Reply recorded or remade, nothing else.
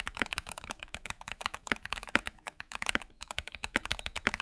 remade